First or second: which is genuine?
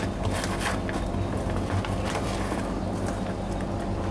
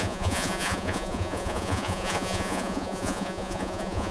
first